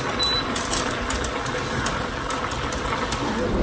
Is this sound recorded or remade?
recorded